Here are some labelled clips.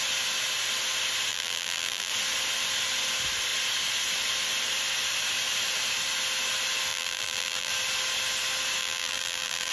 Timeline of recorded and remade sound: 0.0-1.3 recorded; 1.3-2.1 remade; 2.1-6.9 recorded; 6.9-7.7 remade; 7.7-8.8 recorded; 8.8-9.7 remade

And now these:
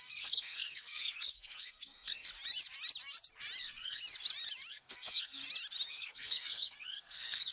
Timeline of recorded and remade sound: 0.0-2.3 remade; 2.3-3.6 recorded; 3.6-4.0 remade; 4.0-4.7 recorded; 4.7-5.4 remade; 5.4-5.9 recorded; 5.9-7.5 remade

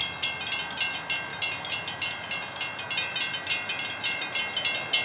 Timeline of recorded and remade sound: 0.0-5.0 recorded

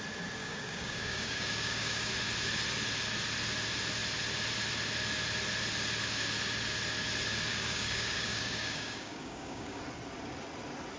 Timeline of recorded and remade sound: 0.0-0.4 recorded; 0.4-2.1 remade; 2.1-7.5 recorded; 7.5-9.8 remade; 9.8-11.0 recorded